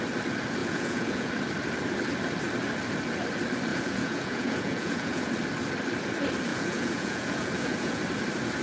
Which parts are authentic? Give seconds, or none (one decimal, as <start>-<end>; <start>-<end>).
0.0-0.6; 1.3-3.7; 5.3-6.5; 8.0-8.6